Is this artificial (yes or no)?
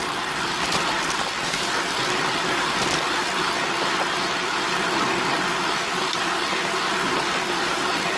no